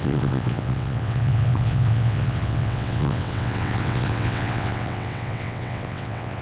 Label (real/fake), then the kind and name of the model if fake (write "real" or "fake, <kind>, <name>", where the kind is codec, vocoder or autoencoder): fake, vocoder, WaveNeXt